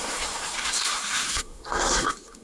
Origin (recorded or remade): remade